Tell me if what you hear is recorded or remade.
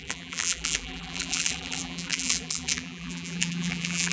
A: remade